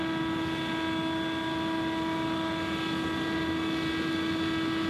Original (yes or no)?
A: yes